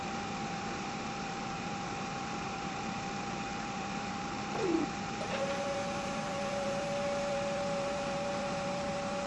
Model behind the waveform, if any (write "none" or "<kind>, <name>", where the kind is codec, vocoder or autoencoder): vocoder, BigVGAN v2